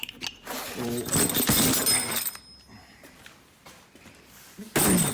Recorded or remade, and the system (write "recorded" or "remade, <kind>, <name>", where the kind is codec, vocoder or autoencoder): recorded